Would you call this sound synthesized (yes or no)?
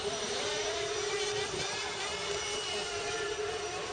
yes